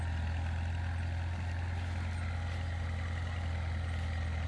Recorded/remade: recorded